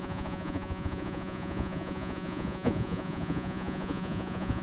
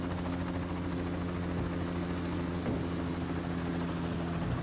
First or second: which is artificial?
first